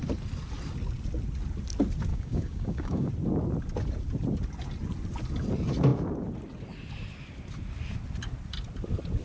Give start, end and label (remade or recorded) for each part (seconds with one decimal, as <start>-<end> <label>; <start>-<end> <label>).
0.0-2.1 recorded; 2.1-3.1 remade; 3.1-9.2 recorded